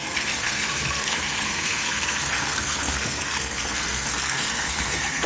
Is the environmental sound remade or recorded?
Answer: remade